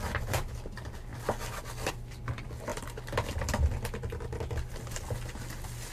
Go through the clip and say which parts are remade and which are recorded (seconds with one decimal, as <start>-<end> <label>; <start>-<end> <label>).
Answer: 0.0-5.9 recorded

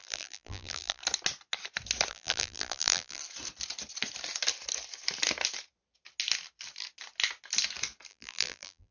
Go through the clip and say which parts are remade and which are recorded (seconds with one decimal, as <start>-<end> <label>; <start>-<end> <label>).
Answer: 0.0-1.0 remade; 1.0-2.1 recorded; 2.1-3.2 remade; 3.2-8.1 recorded; 8.1-8.9 remade

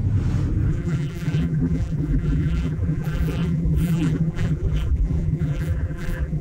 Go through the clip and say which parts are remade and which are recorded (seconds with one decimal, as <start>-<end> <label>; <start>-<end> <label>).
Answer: 0.0-0.7 recorded; 0.7-6.4 remade

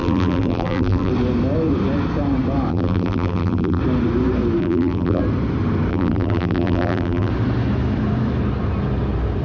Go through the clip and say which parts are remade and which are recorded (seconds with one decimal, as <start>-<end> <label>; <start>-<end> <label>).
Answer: 0.0-1.1 remade; 1.1-2.7 recorded; 2.7-3.8 remade; 3.8-4.6 recorded; 4.6-5.2 remade; 5.2-5.9 recorded; 5.9-7.3 remade; 7.3-9.4 recorded

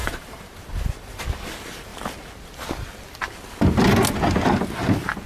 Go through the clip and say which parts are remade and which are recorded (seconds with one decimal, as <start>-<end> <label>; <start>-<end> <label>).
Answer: 0.0-1.2 remade; 1.2-5.3 recorded